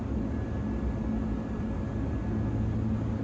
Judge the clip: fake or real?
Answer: real